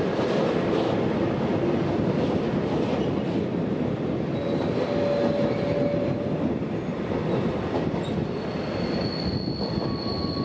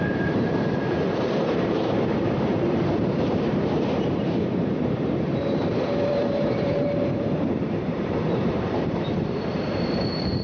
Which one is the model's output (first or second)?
second